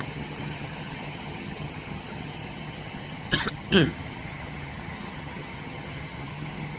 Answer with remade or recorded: remade